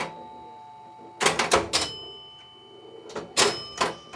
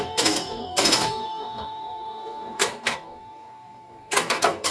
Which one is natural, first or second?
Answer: first